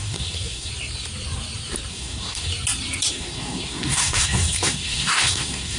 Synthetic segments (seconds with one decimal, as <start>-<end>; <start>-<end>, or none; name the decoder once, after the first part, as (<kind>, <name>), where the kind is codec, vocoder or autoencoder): 0.0-0.7 (codec, SNAC); 1.9-2.5; 3.1-5.8